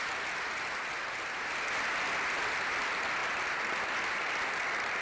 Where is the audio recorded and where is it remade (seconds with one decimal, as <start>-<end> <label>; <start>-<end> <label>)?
0.0-3.2 recorded; 3.2-4.3 remade; 4.3-5.0 recorded

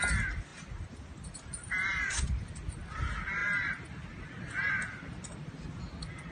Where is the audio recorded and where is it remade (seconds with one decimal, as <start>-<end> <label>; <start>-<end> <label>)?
0.0-0.5 recorded; 0.5-2.5 remade; 2.5-3.4 recorded; 3.4-4.7 remade; 4.7-6.3 recorded

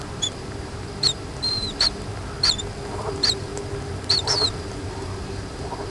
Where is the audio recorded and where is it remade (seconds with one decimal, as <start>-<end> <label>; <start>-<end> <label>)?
0.0-2.1 remade; 2.1-3.0 recorded; 3.0-3.5 remade; 3.5-4.2 recorded; 4.2-5.9 remade

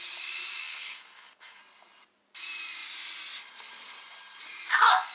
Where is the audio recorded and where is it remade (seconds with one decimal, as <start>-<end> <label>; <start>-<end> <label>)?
0.0-0.6 recorded; 0.6-1.6 remade; 1.6-5.1 recorded

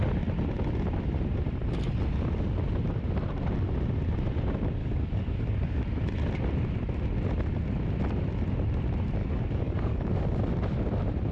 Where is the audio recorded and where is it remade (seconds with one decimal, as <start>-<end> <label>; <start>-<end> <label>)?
0.0-4.8 recorded; 4.8-5.8 remade; 5.8-9.2 recorded; 9.2-10.4 remade; 10.4-11.3 recorded

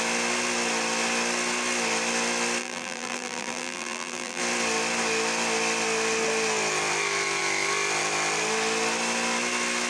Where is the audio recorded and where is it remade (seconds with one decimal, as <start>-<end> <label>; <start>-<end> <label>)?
0.0-2.6 recorded; 2.6-4.4 remade; 4.4-9.9 recorded

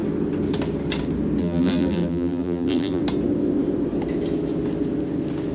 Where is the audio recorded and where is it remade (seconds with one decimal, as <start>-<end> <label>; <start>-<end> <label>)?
0.0-1.4 recorded; 1.4-3.0 remade; 3.0-5.5 recorded